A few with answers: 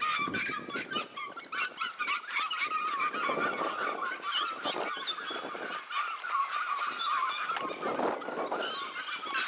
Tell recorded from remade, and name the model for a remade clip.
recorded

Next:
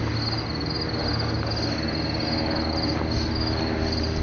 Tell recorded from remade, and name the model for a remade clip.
recorded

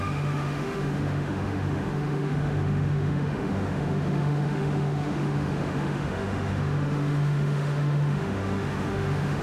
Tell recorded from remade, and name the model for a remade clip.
remade, autoencoder, DAC-VAE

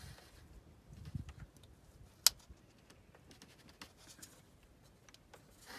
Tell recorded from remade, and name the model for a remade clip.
recorded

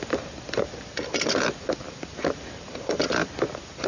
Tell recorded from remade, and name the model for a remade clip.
remade, vocoder, BigVGAN v2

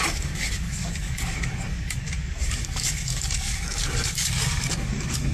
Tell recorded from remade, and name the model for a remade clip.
remade, codec, DAC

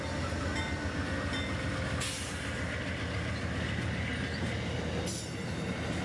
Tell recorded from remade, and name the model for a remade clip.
recorded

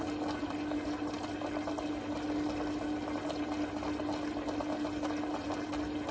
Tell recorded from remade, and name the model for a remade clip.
recorded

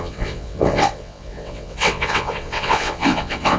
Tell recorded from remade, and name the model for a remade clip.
remade, vocoder, WaveNeXt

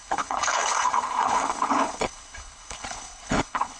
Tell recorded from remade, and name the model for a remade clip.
remade, codec, HILCodec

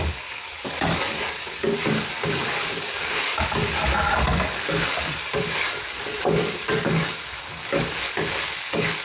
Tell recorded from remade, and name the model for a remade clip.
remade, codec, DAC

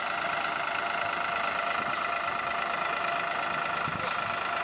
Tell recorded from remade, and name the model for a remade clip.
recorded